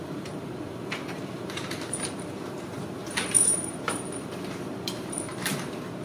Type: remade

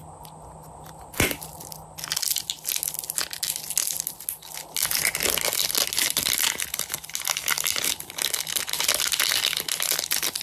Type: recorded